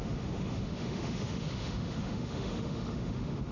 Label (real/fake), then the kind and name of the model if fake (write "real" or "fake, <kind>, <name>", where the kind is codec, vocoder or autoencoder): fake, autoencoder, DAC-VAE